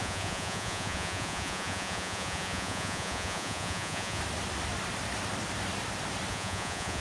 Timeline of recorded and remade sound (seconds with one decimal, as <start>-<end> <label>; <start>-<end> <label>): 0.0-4.2 remade; 4.2-6.3 recorded; 6.3-7.0 remade